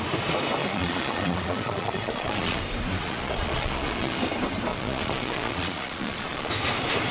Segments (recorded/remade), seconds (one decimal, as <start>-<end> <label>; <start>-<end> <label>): 0.0-0.6 recorded; 0.6-2.6 remade; 2.6-3.0 recorded; 3.0-4.2 remade; 4.2-4.7 recorded; 4.7-6.5 remade; 6.5-7.1 recorded